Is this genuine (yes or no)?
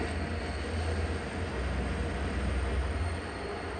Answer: yes